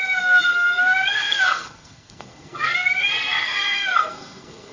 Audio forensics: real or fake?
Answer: fake